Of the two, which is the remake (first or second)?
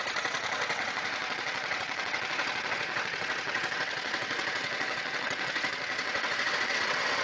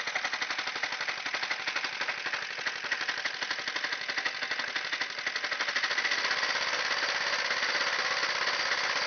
first